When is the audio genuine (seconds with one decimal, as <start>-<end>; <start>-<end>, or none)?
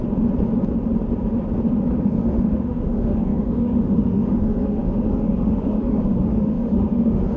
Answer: 0.0-2.0